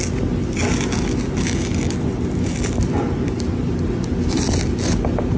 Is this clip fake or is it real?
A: real